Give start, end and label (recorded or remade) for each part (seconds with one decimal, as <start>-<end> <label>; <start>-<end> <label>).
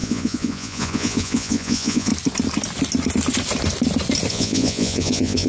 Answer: 0.0-2.1 remade; 2.1-4.3 recorded; 4.3-5.5 remade